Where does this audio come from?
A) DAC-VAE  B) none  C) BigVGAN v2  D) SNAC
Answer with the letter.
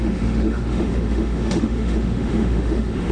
A